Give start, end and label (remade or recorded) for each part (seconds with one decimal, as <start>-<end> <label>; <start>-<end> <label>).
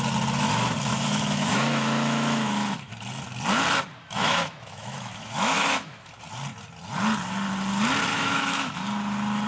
0.0-0.9 recorded; 0.9-2.9 remade; 2.9-4.0 recorded; 4.0-6.1 remade; 6.1-8.1 recorded; 8.1-8.8 remade; 8.8-9.5 recorded